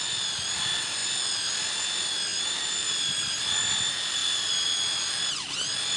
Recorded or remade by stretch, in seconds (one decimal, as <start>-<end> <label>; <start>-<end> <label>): 0.0-2.3 recorded; 2.3-3.4 remade; 3.4-6.0 recorded